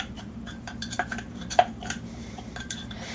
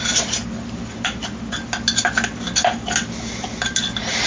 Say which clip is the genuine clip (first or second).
second